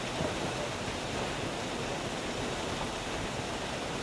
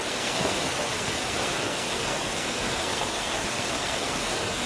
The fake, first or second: second